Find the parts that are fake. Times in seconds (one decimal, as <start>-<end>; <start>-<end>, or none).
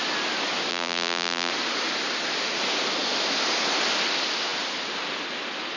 0.7-1.5